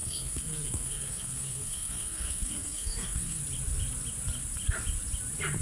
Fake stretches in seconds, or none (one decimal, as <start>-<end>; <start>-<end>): 0.0-3.4